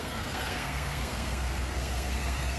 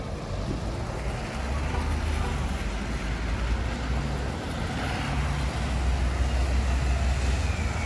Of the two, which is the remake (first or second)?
first